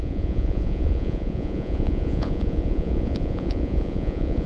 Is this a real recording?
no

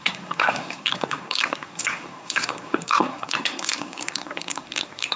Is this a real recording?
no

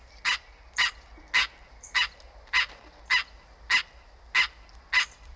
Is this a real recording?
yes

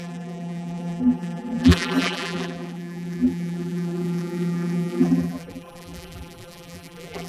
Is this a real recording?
no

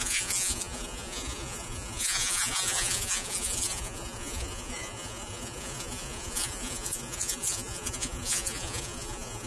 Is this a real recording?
no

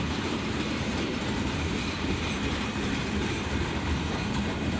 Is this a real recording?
no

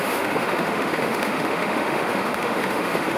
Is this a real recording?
no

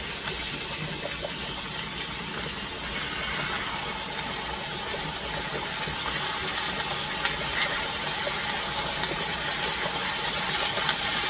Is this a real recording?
yes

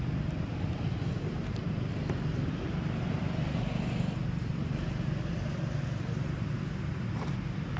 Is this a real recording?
yes